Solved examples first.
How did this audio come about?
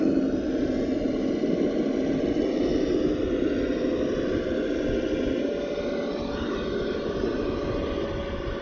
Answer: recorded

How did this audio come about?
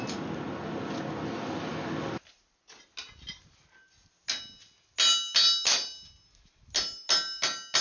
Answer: recorded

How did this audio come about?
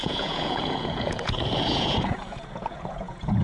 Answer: remade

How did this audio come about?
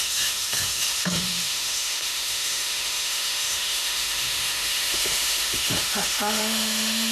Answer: remade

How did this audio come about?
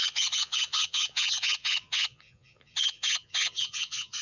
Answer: remade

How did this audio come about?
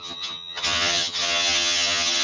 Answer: remade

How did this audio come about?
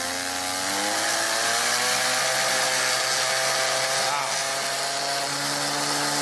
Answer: recorded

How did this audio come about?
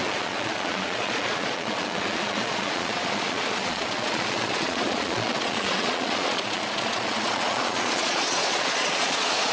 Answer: remade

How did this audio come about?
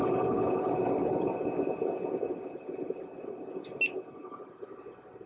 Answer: recorded